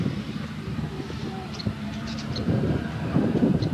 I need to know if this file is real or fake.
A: fake